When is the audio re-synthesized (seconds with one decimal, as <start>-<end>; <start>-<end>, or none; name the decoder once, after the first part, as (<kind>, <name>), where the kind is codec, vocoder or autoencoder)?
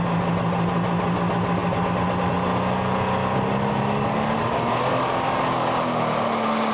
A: none